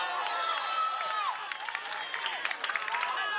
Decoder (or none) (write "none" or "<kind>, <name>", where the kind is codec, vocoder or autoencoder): none